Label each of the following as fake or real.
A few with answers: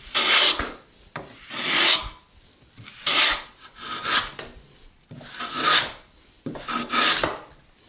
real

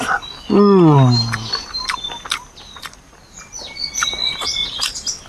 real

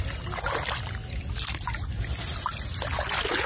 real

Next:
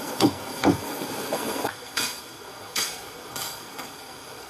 fake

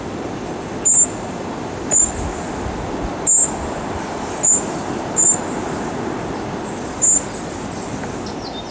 real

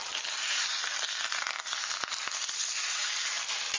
real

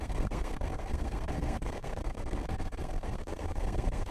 fake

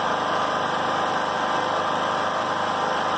real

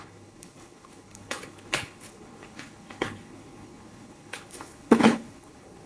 fake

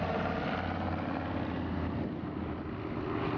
real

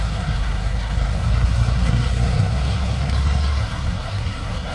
fake